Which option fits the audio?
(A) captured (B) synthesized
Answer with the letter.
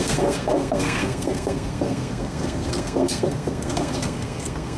B